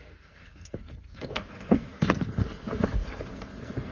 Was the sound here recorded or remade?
remade